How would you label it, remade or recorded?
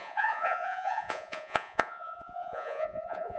remade